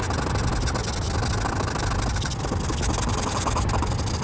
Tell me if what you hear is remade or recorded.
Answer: recorded